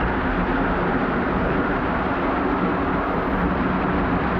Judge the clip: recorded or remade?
recorded